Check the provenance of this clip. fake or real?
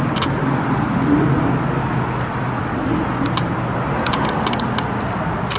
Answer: real